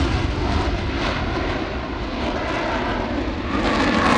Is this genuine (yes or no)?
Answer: yes